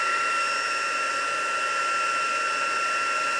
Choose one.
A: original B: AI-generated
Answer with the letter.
A